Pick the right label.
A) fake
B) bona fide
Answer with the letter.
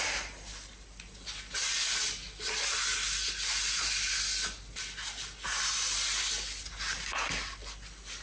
B